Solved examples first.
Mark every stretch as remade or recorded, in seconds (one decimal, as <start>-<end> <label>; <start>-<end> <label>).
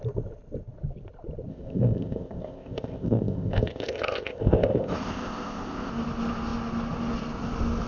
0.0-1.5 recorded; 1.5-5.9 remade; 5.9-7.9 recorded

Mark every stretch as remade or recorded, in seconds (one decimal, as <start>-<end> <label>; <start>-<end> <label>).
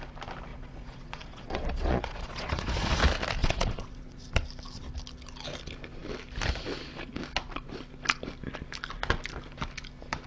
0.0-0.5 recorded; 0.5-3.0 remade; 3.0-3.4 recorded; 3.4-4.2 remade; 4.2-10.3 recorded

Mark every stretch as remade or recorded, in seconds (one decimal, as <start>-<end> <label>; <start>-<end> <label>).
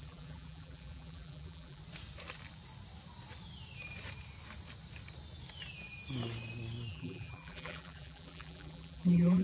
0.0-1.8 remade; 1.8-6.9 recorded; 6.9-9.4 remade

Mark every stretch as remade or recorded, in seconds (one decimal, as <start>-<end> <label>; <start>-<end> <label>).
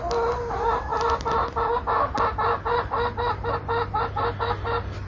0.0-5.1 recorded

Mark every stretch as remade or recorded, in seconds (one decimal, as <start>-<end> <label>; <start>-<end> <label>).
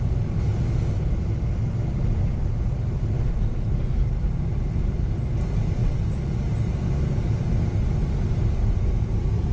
0.0-9.5 recorded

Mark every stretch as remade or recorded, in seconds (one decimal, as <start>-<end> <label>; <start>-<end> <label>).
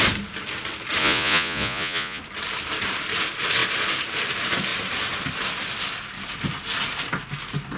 0.0-1.0 recorded; 1.0-2.2 remade; 2.2-7.8 recorded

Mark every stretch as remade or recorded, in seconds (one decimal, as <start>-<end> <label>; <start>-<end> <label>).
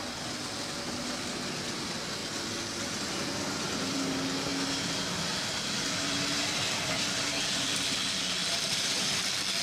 0.0-8.4 recorded; 8.4-9.2 remade; 9.2-9.6 recorded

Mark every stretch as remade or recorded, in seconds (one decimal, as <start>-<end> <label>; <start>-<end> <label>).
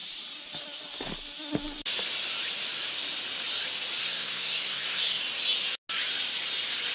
0.0-4.0 recorded; 4.0-5.2 remade; 5.2-6.9 recorded